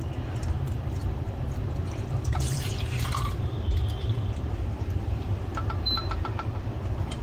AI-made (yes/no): yes